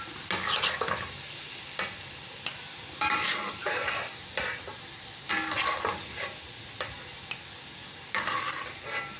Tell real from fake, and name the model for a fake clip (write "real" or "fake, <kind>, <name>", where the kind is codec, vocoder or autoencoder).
real